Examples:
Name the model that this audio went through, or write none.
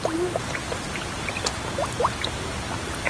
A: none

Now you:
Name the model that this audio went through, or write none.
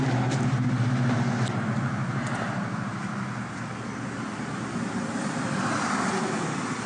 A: none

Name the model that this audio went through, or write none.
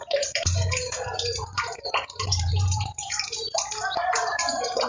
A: vocoder, BigVGAN v2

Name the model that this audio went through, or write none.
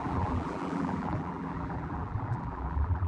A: vocoder, BigVGAN v2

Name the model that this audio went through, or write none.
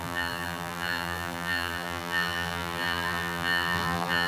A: vocoder, BigVGAN v2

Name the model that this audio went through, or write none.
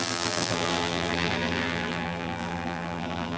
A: vocoder, BigVGAN v2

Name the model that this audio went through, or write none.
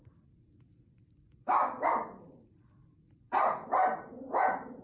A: vocoder, BigVGAN v2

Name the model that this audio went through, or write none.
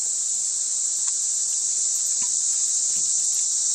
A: none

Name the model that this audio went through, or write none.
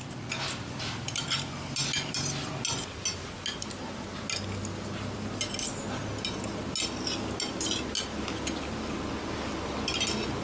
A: none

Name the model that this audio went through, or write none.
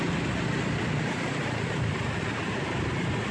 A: vocoder, BigVGAN v2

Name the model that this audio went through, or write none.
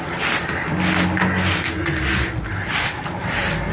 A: none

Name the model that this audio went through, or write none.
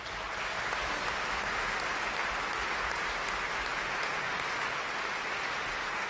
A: none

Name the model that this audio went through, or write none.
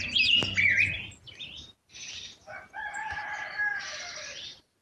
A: none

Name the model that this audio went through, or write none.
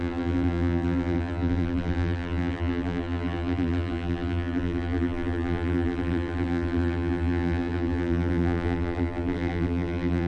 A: vocoder, BigVGAN v2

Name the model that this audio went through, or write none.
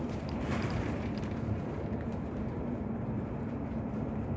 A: vocoder, BigVGAN v2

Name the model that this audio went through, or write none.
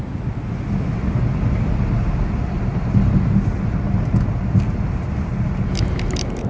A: none